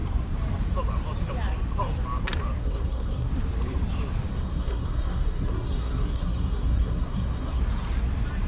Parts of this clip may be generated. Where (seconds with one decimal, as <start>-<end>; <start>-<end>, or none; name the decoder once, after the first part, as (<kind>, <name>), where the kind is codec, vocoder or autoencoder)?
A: 2.6-3.3 (codec, SNAC); 4.3-7.6